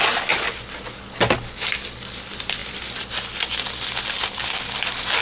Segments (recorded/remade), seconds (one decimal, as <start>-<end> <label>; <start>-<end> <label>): 0.0-5.2 recorded